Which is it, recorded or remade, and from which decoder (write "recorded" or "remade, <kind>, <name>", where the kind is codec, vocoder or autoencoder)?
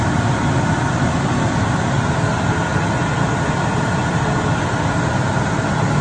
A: recorded